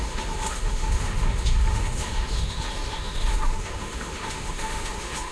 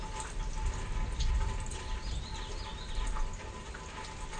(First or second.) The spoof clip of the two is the first